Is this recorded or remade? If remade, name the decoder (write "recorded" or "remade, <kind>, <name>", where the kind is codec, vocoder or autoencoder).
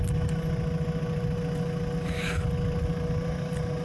recorded